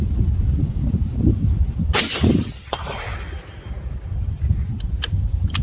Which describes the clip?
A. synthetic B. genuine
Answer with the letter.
B